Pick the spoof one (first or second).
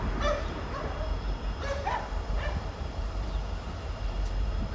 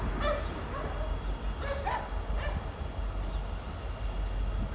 first